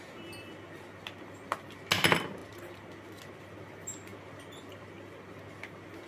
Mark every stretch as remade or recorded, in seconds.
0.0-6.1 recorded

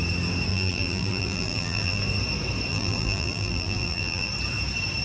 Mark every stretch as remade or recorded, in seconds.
0.0-0.5 recorded; 0.5-2.0 remade; 2.0-2.7 recorded; 2.7-4.3 remade; 4.3-5.0 recorded

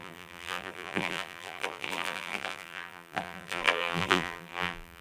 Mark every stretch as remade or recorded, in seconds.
0.0-5.0 remade

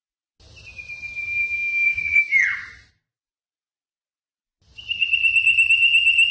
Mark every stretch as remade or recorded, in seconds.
0.0-1.4 recorded; 1.4-2.4 remade; 2.4-6.3 recorded

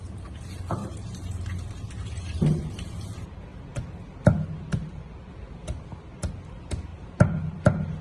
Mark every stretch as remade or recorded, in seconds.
0.0-0.8 recorded; 0.8-2.6 remade; 2.6-6.9 recorded; 6.9-8.0 remade

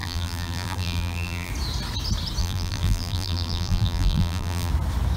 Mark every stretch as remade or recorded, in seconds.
0.0-1.5 remade; 1.5-2.4 recorded; 2.4-4.7 remade; 4.7-5.2 recorded